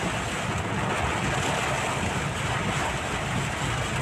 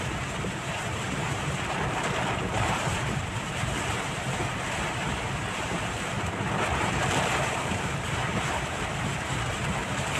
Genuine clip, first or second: first